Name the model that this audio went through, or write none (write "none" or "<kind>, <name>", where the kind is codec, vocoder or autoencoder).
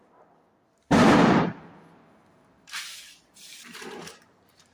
vocoder, BigVGAN v2